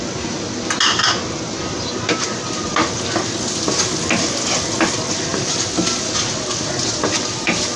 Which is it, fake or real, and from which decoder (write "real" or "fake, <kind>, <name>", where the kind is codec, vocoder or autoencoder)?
real